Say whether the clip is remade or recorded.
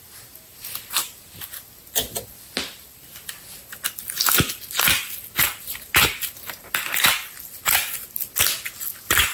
recorded